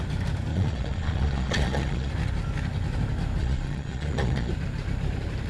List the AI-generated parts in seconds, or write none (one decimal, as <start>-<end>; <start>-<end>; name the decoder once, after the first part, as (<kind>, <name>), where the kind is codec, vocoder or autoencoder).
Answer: 0.5-2.1 (vocoder, Vocos); 3.4-4.5